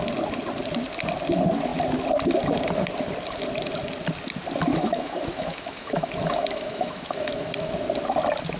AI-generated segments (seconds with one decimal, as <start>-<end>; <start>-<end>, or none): 4.7-7.7